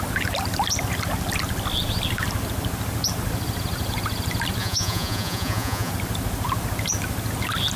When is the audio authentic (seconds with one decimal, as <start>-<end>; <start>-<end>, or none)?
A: 0.0-4.6; 5.9-7.8